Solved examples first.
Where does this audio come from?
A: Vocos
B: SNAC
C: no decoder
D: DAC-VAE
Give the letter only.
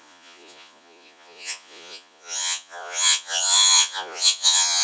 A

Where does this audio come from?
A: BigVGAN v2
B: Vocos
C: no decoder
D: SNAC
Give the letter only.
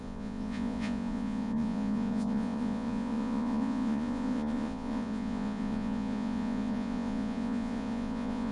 B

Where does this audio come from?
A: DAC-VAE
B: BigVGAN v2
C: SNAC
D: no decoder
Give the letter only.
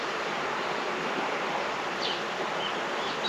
D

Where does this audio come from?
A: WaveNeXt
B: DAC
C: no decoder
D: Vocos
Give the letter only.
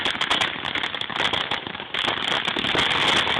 C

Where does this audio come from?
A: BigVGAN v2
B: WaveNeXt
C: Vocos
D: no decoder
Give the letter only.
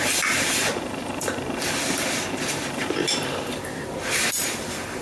A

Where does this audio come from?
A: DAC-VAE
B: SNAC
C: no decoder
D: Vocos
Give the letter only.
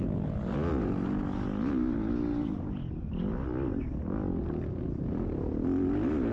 C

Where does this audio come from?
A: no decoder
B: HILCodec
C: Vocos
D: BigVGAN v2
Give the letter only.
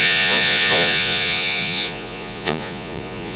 C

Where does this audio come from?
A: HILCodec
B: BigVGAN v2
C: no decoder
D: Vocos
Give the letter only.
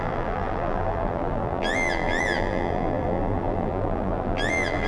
B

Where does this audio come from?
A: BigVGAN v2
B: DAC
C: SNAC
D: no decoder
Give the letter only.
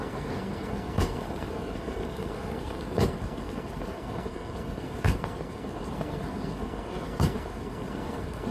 C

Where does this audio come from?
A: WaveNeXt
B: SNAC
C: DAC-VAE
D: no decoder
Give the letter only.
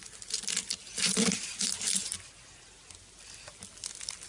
D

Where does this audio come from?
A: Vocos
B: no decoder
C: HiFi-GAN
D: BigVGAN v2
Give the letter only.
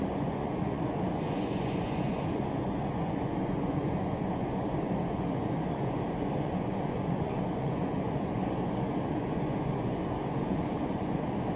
A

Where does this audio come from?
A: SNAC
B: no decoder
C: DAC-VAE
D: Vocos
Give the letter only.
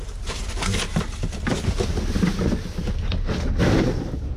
B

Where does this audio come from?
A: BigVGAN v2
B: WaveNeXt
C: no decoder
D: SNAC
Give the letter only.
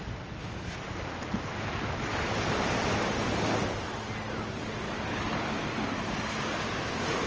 C